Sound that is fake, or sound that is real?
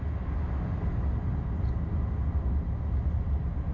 real